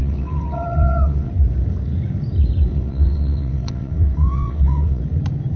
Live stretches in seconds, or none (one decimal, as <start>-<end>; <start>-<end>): 1.3-2.7; 5.0-5.6